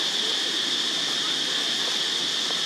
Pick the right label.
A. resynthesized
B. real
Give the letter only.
B